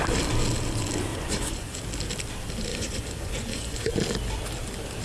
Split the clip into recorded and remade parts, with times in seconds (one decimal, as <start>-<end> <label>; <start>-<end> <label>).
0.0-1.1 recorded; 1.1-1.8 remade; 1.8-2.7 recorded; 2.7-3.9 remade; 3.9-5.0 recorded

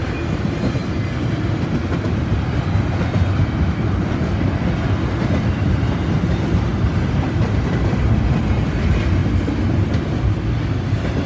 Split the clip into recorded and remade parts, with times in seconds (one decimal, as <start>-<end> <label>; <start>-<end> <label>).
0.0-6.7 recorded; 6.7-8.7 remade; 8.7-11.3 recorded

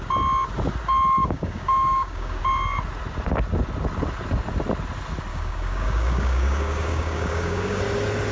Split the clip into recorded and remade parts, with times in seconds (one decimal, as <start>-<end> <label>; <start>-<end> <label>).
0.0-1.2 recorded; 1.2-2.4 remade; 2.4-5.3 recorded; 5.3-7.8 remade; 7.8-8.3 recorded